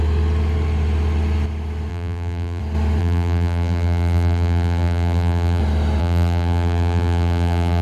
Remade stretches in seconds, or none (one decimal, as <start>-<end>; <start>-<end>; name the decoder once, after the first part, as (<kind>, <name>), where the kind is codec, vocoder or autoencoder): 1.9-2.6 (vocoder, BigVGAN v2); 3.0-5.6; 6.0-7.8